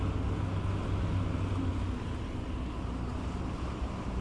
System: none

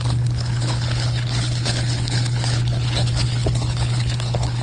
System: codec, HILCodec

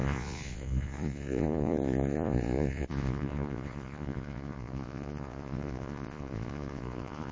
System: vocoder, Vocos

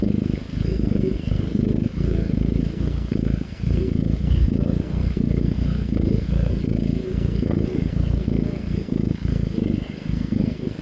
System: codec, SNAC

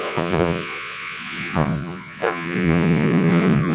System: vocoder, Vocos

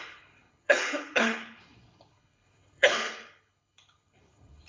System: codec, HILCodec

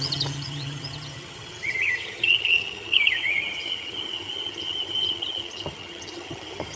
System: vocoder, HiFi-GAN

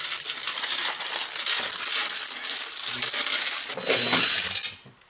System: none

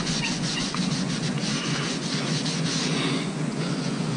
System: vocoder, Vocos